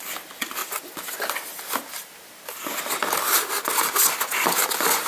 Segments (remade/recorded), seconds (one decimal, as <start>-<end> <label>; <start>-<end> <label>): 0.0-5.1 recorded